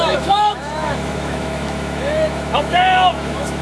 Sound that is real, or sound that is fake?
fake